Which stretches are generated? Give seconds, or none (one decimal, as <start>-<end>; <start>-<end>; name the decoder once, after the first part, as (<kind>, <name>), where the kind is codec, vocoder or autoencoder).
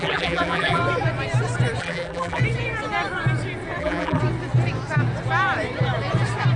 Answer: 0.0-0.8 (vocoder, BigVGAN v2); 1.8-2.4; 3.8-4.2